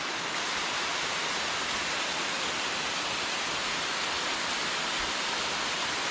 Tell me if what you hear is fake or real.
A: real